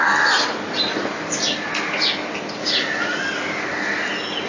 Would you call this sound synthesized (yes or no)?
no